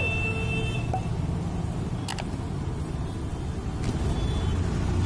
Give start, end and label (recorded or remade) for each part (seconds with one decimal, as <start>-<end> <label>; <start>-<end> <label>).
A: 0.0-5.1 recorded